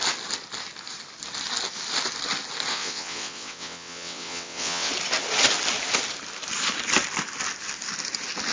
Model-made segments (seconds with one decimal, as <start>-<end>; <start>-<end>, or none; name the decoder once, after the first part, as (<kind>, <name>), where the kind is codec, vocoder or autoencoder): 2.7-4.9 (vocoder, WaveNeXt)